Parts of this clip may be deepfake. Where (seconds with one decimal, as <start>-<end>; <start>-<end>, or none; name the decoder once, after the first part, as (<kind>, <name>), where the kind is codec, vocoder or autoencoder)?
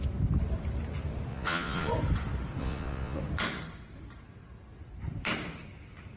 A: 1.3-1.9 (vocoder, Vocos); 2.6-3.2